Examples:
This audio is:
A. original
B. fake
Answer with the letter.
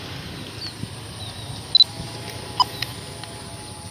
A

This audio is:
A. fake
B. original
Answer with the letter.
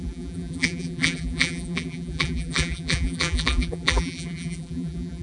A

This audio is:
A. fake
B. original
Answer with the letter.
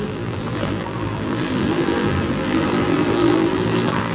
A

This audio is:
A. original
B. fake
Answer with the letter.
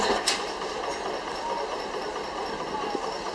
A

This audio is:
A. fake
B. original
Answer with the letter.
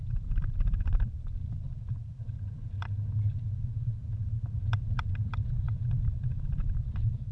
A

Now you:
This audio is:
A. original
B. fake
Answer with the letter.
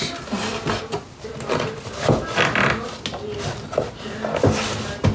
A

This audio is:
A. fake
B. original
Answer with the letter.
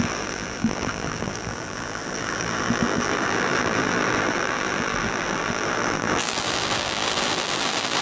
A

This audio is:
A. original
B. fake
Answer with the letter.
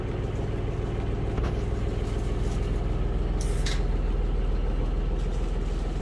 A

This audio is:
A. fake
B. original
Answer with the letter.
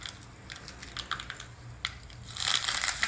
B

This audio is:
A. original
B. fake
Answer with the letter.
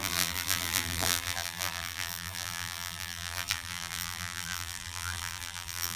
B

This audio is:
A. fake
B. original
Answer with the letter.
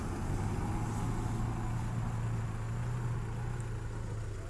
B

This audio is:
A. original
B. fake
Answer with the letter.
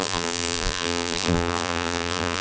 B